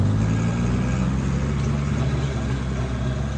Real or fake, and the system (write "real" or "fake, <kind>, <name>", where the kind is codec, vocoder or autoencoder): real